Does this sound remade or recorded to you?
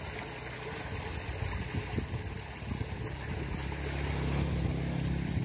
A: recorded